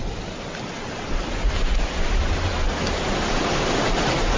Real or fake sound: real